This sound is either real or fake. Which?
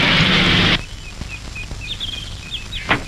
real